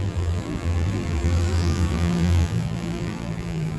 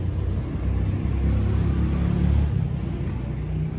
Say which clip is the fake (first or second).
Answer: first